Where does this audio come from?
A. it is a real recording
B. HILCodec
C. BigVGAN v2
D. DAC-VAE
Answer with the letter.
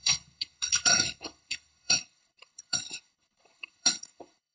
B